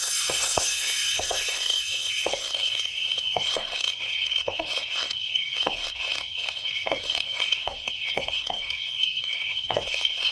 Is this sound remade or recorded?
remade